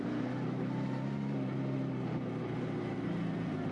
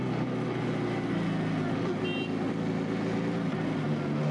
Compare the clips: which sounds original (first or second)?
second